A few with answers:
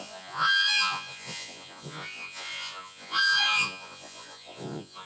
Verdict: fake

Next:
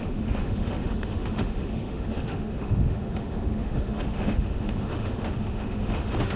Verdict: fake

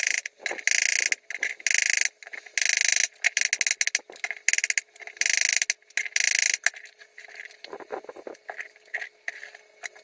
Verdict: real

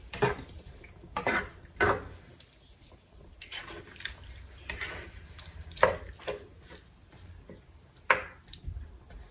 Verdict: real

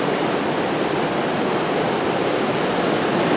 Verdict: real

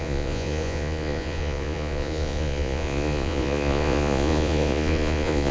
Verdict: fake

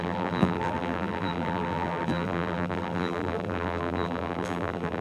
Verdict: fake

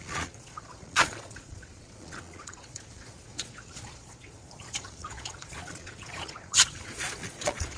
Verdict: fake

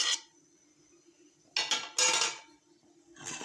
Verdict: real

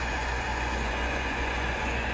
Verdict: fake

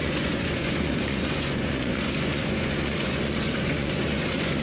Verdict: fake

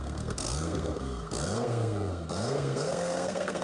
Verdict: fake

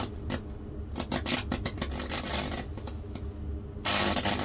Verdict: real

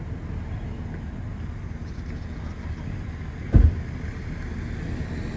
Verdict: real